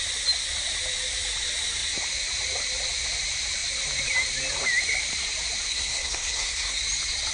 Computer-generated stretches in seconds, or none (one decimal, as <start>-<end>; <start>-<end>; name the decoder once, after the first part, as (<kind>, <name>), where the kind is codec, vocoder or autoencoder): 5.7-6.8 (codec, SNAC)